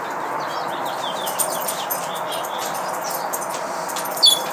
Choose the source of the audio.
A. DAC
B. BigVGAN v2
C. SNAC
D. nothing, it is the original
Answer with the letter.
D